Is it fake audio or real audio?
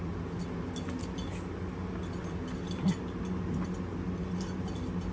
real